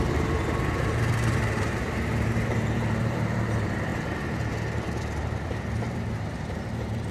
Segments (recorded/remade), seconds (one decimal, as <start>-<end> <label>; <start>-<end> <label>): 0.0-7.1 remade